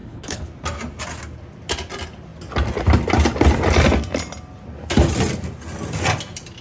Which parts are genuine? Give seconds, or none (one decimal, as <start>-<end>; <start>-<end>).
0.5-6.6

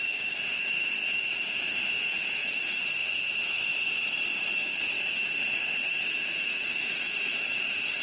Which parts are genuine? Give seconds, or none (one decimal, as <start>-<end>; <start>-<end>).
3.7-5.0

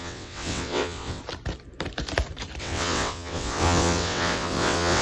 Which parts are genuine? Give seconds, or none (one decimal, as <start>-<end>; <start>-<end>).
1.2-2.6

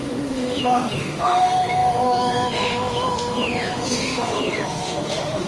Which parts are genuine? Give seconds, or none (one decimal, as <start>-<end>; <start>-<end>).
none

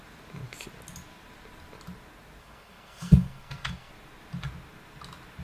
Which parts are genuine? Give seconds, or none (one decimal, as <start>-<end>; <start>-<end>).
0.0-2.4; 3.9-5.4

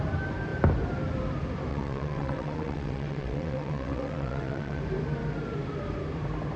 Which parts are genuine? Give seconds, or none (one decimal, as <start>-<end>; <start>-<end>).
0.0-1.7; 4.8-6.6

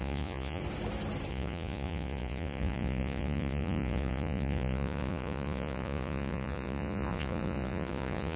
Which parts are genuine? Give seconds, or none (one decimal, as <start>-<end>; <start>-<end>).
0.6-1.3